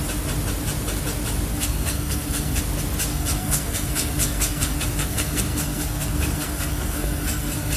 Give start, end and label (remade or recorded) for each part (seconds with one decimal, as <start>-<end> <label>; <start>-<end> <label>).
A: 0.0-1.5 recorded; 1.5-2.6 remade; 2.6-3.1 recorded; 3.1-7.8 remade